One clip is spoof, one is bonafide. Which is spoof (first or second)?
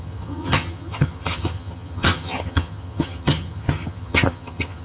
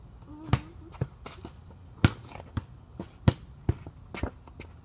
first